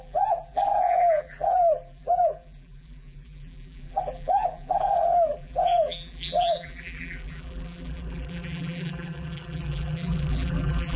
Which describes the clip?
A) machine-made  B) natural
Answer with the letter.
A